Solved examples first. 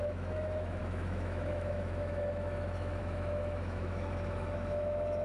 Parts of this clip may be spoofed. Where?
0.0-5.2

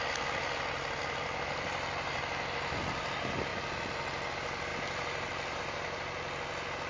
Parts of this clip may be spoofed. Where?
none

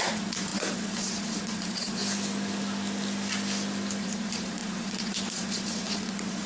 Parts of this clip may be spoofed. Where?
0.0-2.0; 4.0-6.5

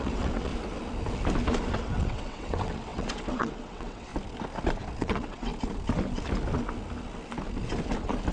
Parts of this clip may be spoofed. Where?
0.0-0.5; 1.7-4.1; 5.0-5.5

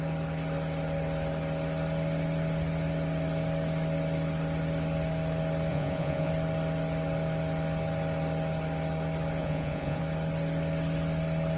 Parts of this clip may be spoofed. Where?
5.7-6.3; 9.4-10.0

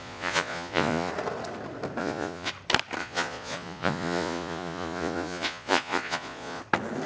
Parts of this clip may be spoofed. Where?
0.0-1.1; 2.0-2.5; 3.0-6.6

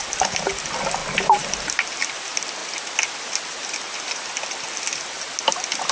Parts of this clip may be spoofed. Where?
none